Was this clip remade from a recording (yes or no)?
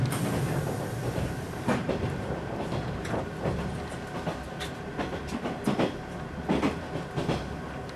no